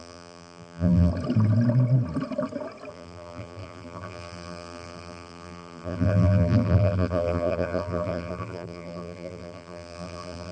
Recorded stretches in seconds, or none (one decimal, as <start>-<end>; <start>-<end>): 1.1-2.9